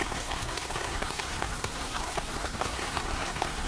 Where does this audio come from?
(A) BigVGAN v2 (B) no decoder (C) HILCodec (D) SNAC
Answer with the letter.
D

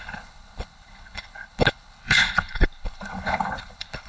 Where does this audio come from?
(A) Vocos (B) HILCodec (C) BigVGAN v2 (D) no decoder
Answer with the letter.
B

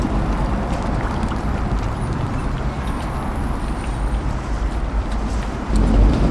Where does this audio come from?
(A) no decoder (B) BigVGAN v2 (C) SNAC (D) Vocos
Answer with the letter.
B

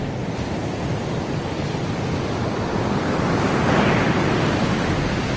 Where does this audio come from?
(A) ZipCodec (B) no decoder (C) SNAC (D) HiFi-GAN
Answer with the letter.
B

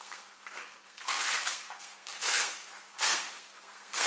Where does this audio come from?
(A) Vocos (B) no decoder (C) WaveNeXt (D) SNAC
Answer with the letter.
D